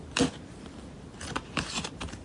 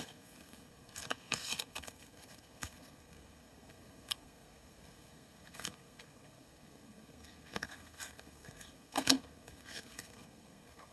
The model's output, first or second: second